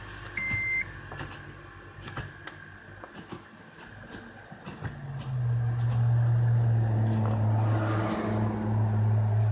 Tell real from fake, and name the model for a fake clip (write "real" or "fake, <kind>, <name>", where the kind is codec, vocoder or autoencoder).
real